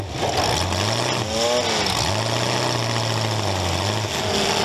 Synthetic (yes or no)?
no